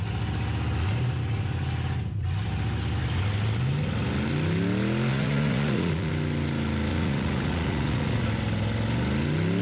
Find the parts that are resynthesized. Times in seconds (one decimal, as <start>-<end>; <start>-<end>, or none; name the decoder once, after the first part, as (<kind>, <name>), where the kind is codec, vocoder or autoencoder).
5.1-6.1 (vocoder, Vocos); 6.9-8.3